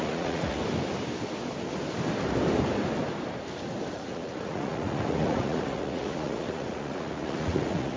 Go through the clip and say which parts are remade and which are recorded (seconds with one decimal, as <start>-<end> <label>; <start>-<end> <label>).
0.0-0.6 remade; 0.6-3.9 recorded; 3.9-8.0 remade